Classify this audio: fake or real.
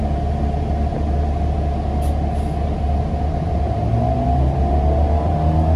real